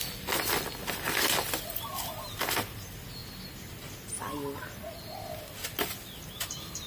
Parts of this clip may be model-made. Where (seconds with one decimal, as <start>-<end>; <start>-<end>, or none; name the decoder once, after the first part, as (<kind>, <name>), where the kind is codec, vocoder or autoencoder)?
0.0-0.8 (vocoder, BigVGAN v2); 1.6-3.2; 6.3-6.9